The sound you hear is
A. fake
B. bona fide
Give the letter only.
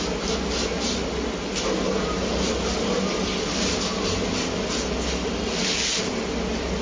B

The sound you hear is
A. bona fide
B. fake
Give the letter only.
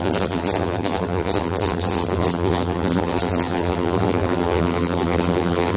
B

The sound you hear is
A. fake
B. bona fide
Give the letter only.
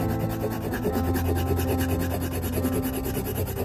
B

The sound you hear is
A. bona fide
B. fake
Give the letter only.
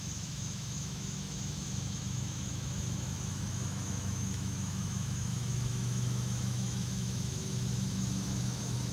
B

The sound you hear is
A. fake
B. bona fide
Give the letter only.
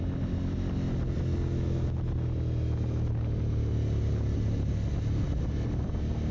B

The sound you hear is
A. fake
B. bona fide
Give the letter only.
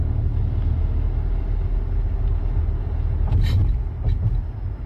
B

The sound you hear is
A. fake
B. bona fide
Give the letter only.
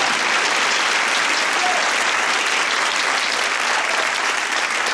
B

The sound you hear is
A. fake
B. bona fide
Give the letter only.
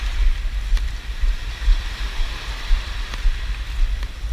B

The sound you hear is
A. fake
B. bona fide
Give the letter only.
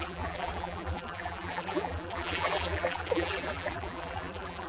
A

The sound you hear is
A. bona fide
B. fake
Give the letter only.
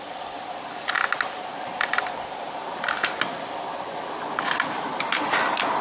A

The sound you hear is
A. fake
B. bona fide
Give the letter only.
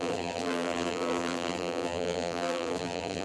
A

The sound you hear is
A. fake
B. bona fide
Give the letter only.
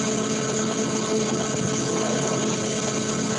A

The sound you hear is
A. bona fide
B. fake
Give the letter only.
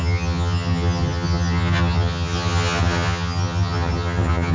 B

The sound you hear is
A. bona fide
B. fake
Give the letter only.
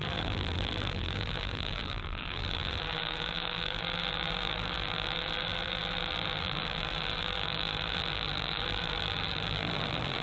B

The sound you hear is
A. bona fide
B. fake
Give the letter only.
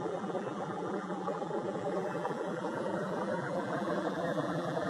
B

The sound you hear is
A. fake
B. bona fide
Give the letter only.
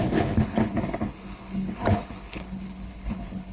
A